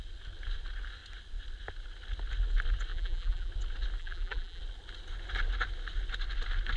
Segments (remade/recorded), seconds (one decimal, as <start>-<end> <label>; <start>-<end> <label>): 0.0-2.9 recorded; 2.9-3.5 remade; 3.5-4.0 recorded; 4.0-4.6 remade; 4.6-6.8 recorded